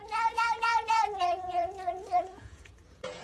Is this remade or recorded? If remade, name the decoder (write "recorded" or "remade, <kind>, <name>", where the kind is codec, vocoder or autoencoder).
remade, vocoder, Vocos